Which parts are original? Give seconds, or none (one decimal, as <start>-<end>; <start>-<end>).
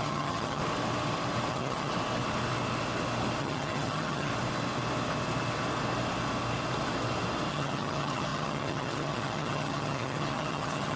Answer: 0.6-1.5; 1.9-3.4; 4.3-7.5